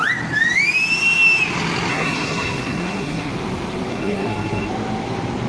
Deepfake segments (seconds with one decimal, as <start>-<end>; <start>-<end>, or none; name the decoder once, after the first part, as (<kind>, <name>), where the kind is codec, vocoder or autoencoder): 1.9-3.3 (codec, SNAC); 3.9-4.7